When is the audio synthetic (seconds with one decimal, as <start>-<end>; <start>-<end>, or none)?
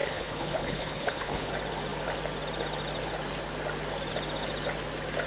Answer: 0.0-1.5